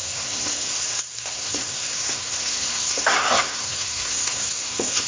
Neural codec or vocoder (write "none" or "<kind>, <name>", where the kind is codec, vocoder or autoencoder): codec, SNAC